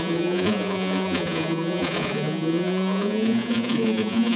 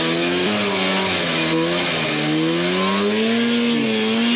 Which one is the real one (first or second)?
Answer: second